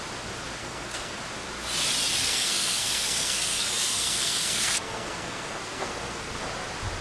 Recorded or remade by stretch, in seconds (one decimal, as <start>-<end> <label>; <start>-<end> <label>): 0.0-0.6 recorded; 0.6-1.2 remade; 1.2-2.2 recorded; 2.2-6.4 remade; 6.4-7.0 recorded